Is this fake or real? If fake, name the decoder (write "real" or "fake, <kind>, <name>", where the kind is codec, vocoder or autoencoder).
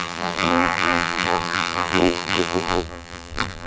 fake, vocoder, BigVGAN v2